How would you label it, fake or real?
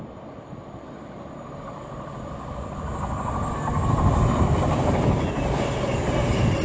real